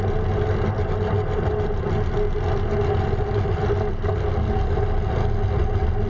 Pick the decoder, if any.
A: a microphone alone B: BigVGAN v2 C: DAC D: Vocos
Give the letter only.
A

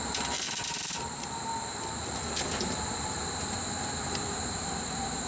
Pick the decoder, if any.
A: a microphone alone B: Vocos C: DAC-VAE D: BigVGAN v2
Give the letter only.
D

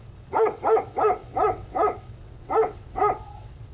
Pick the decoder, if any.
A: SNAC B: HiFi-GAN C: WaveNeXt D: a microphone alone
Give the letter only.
C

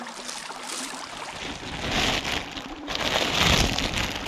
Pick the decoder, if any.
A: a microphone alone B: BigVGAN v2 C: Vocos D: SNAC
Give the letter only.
A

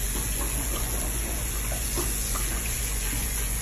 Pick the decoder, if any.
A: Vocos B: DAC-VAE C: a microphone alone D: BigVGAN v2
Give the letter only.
A